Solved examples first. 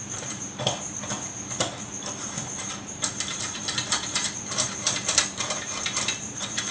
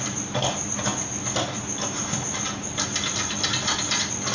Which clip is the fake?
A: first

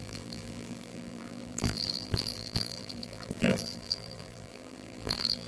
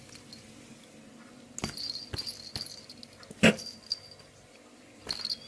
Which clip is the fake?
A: first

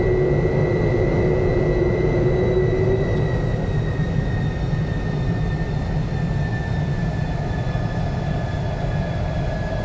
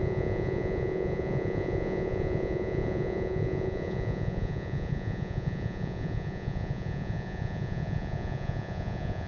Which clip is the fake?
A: second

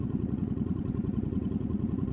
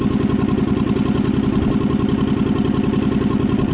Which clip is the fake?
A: first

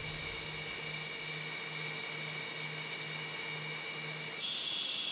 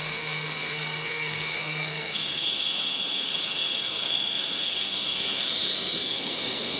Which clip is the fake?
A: second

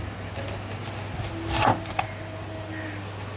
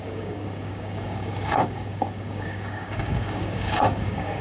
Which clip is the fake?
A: second